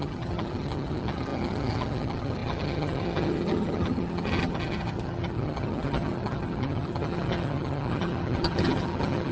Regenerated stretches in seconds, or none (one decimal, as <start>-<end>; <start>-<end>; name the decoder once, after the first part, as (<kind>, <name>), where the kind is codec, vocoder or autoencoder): 0.0-9.3 (vocoder, HiFi-GAN)